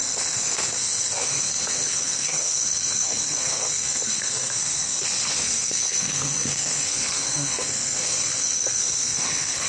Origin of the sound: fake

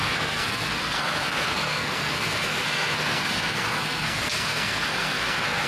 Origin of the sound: fake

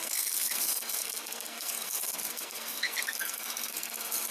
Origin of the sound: fake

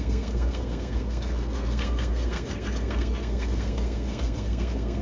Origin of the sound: fake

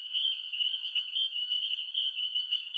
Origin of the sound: fake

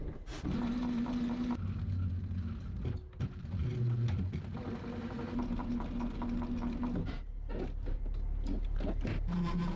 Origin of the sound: real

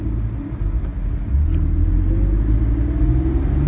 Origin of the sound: real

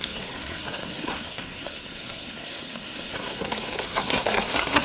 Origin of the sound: fake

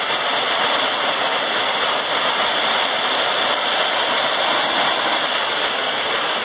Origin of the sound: real